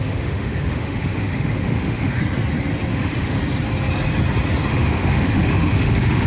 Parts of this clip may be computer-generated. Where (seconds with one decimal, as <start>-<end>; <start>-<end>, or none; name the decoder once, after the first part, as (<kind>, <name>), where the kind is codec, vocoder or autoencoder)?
0.0-2.2 (autoencoder, DAC-VAE); 2.9-3.4; 4.7-6.3